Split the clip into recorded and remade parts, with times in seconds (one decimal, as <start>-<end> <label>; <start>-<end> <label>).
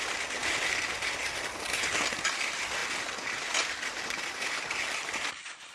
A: 0.0-5.7 recorded